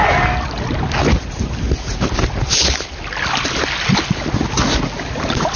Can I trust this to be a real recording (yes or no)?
yes